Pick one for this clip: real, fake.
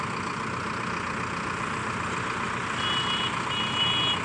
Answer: real